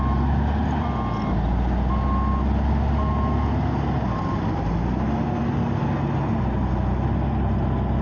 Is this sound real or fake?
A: real